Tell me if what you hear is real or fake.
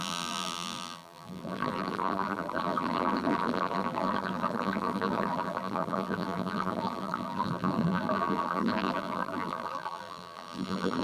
fake